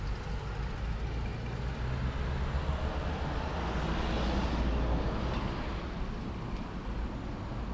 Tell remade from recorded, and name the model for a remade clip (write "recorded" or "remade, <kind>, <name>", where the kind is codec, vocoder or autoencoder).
recorded